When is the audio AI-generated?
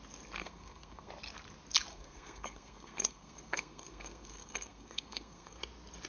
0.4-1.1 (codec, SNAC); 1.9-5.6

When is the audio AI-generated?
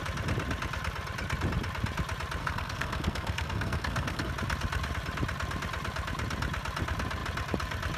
2.4-4.3 (codec, SNAC)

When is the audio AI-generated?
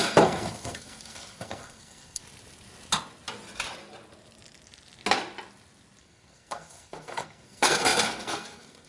0.0-2.2 (codec, SNAC); 6.0-8.9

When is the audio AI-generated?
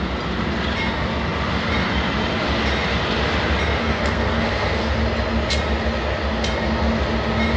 3.8-4.9 (codec, SNAC)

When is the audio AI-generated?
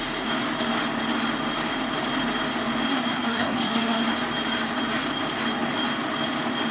2.9-4.0 (codec, SNAC)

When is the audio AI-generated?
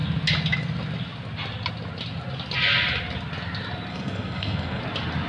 3.9-4.8 (codec, SNAC)